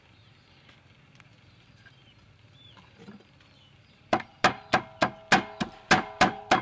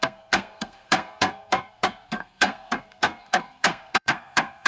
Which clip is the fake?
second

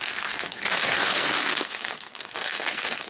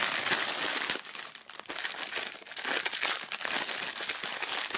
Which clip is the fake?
first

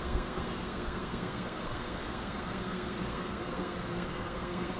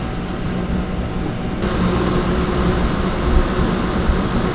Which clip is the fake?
first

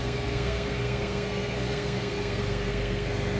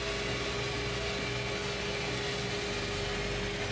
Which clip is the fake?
first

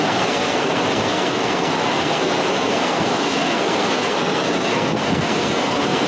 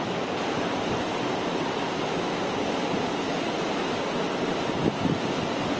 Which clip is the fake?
first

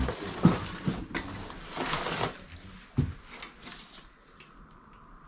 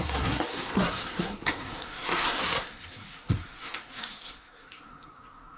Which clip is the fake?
second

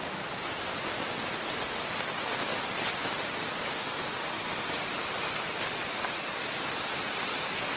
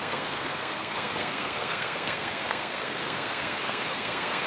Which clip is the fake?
second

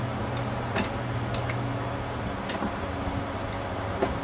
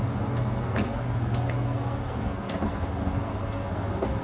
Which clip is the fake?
second